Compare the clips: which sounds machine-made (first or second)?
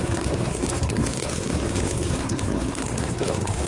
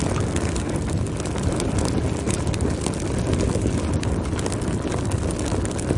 first